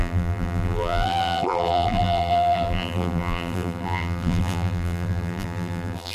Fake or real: fake